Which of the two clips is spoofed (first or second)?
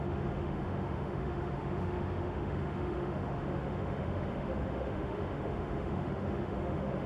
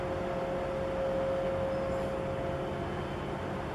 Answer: first